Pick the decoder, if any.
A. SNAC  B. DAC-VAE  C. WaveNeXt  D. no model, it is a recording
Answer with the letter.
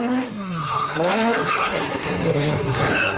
A